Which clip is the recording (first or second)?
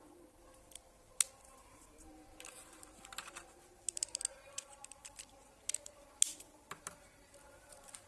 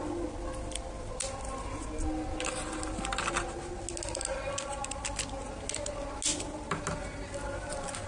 second